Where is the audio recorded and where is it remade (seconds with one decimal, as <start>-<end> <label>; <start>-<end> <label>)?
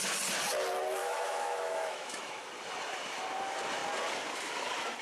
0.0-1.0 recorded; 1.0-2.5 remade; 2.5-5.0 recorded